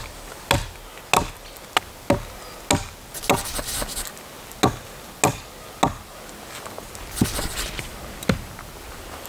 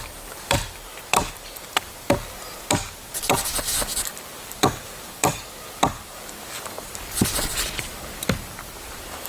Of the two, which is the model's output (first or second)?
second